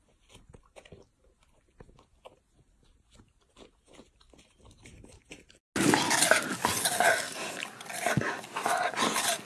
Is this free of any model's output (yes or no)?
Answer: yes